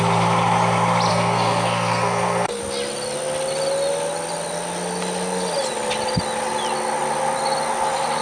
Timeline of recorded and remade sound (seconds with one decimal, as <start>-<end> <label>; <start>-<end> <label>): 0.0-1.1 recorded; 1.1-2.6 remade; 2.6-8.2 recorded